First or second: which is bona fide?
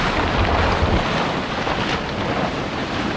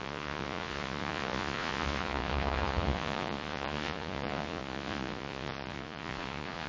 first